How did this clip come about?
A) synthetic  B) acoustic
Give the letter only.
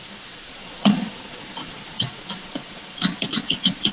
A